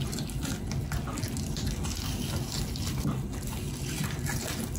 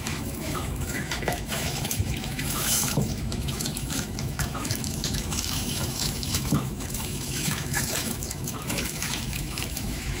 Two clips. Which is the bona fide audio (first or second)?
first